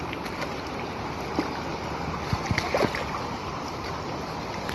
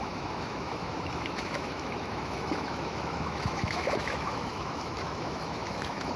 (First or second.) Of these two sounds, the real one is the first